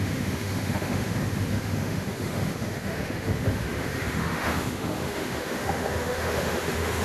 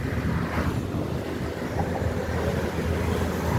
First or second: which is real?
second